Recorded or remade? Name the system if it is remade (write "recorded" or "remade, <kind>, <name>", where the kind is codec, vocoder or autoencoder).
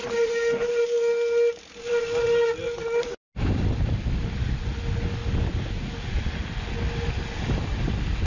recorded